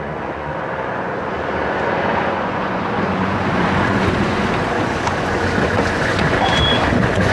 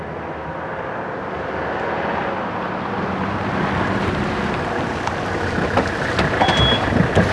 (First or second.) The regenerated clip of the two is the first